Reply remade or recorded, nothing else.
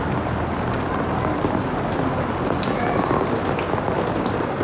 recorded